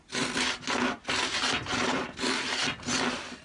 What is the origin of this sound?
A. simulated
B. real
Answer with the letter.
B